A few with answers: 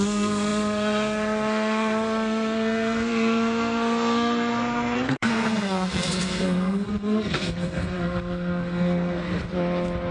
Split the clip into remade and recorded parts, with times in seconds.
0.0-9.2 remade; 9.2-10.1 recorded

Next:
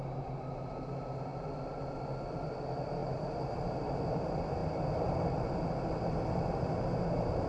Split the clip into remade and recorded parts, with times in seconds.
0.0-3.0 recorded; 3.0-3.9 remade; 3.9-7.5 recorded

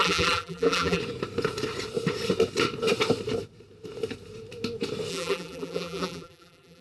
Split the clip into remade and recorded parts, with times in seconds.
0.0-1.0 remade; 1.0-5.1 recorded; 5.1-6.8 remade

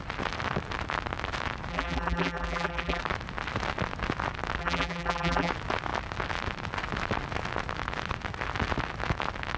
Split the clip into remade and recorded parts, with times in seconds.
0.0-1.7 recorded; 1.7-3.0 remade; 3.0-4.6 recorded; 4.6-5.5 remade; 5.5-9.6 recorded

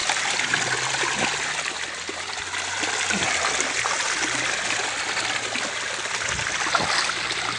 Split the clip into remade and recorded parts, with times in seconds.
0.0-7.6 recorded

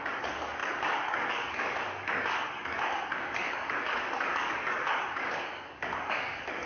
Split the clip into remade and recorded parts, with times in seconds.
0.0-6.7 remade